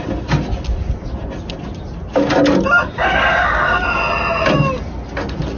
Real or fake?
real